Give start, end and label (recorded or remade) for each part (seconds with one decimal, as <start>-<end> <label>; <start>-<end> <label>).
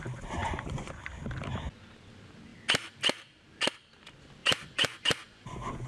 0.0-0.4 recorded; 0.4-0.9 remade; 0.9-4.4 recorded; 4.4-5.9 remade